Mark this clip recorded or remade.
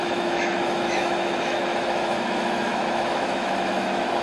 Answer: remade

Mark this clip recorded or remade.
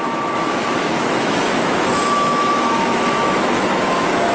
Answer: remade